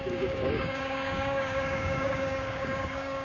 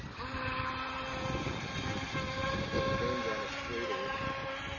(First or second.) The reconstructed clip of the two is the first